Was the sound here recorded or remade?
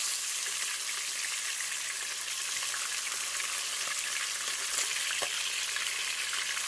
recorded